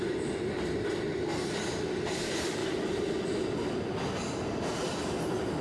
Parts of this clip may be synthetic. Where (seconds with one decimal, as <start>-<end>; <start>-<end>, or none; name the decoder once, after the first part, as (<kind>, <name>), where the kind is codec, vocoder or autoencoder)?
none